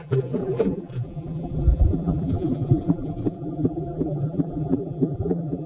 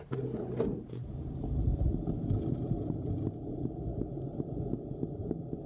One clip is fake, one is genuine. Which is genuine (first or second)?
second